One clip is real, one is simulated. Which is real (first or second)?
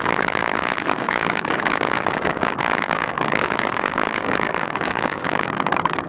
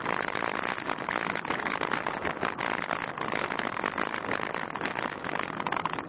second